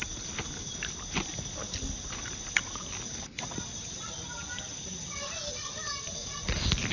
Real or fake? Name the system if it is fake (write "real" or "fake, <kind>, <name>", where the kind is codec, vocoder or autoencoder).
real